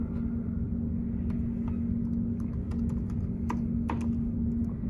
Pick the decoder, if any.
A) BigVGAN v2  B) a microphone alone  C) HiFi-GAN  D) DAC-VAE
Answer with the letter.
B